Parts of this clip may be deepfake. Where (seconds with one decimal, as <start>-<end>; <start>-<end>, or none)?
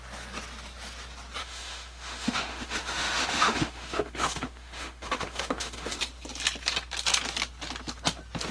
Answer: 1.4-6.0